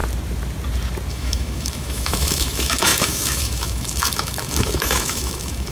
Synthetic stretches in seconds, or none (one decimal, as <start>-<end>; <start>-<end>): 1.1-5.7